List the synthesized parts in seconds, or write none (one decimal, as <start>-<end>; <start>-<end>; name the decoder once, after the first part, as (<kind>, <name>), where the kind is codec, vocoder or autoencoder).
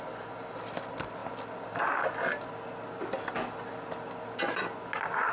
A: none